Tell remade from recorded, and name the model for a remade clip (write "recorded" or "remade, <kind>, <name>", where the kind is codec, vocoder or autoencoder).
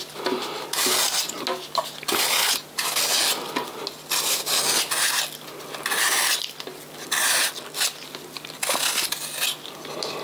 recorded